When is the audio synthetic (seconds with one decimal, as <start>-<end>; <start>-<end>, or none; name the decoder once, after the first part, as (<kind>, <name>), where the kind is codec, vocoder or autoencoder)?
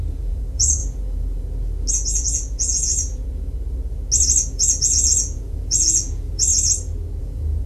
0.0-0.8 (vocoder, Vocos); 1.9-2.9; 4.5-6.5; 7.2-7.7